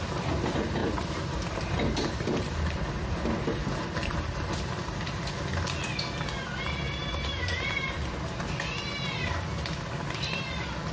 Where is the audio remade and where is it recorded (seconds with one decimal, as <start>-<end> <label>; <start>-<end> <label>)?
0.0-0.8 recorded; 0.8-5.3 remade; 5.3-7.0 recorded; 7.0-8.2 remade; 8.2-10.9 recorded